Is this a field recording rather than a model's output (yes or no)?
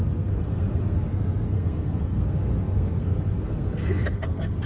no